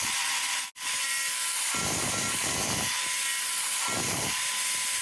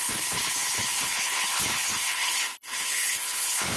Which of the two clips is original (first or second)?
first